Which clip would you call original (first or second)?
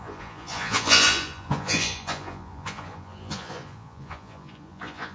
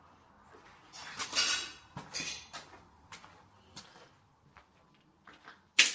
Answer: second